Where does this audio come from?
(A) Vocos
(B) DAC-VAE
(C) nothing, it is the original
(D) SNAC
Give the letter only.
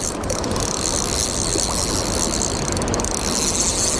C